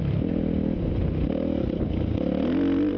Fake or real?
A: real